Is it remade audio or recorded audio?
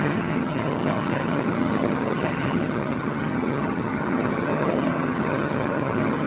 remade